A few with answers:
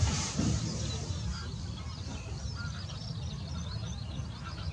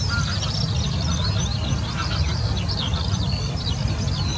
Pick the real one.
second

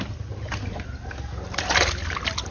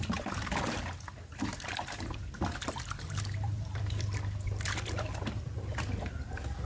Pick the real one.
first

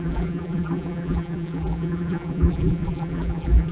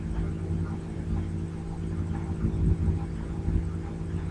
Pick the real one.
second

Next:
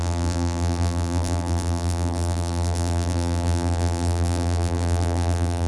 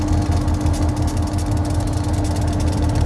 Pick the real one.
second